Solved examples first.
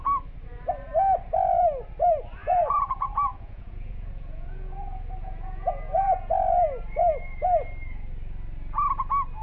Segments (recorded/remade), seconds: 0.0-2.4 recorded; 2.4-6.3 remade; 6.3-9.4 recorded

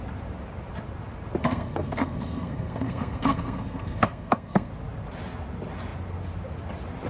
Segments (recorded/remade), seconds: 0.0-1.4 recorded; 1.4-4.7 remade; 4.7-7.1 recorded

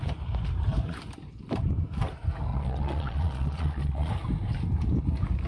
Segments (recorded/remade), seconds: 0.0-2.5 recorded; 2.5-4.1 remade; 4.1-5.5 recorded

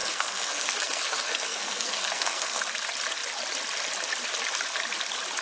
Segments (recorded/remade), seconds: 0.0-2.6 remade; 2.6-5.4 recorded